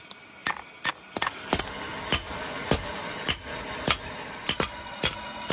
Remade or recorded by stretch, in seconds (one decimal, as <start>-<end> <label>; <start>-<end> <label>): 0.0-5.5 recorded

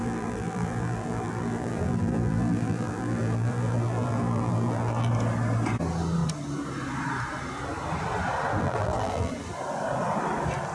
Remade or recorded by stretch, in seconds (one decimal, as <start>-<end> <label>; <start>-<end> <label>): 0.0-5.1 remade; 5.1-8.6 recorded; 8.6-9.3 remade; 9.3-10.7 recorded